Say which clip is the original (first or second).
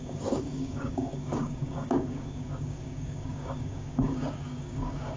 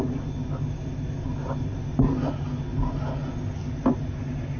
second